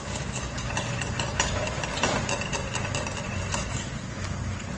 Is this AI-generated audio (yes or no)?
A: no